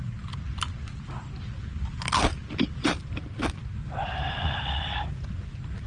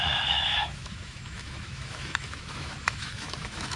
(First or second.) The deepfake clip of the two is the second